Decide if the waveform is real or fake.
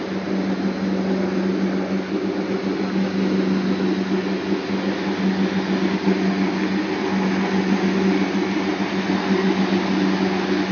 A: real